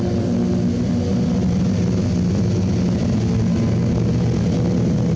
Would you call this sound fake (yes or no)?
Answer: no